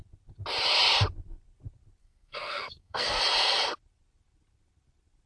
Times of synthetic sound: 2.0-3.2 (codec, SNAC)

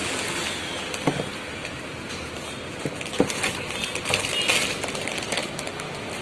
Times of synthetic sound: none

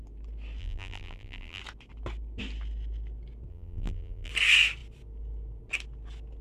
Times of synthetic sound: 0.6-1.6 (vocoder, BigVGAN v2); 3.5-4.3

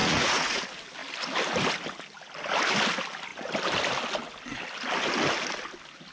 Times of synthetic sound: 0.0-0.6 (vocoder, Vocos)

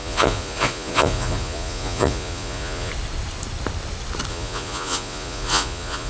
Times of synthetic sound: 0.0-2.9 (vocoder, Vocos); 4.3-6.1

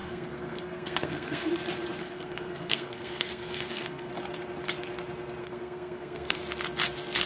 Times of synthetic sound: 0.0-1.5 (codec, SNAC); 2.0-4.1; 5.4-6.4